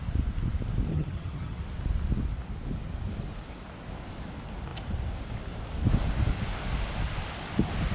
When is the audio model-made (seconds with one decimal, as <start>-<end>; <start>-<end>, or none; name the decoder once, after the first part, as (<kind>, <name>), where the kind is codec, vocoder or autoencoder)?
0.9-1.6 (vocoder, HiFi-GAN)